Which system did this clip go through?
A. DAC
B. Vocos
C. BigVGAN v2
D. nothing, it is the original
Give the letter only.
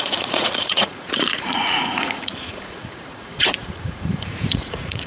B